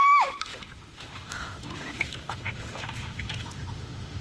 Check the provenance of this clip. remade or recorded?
remade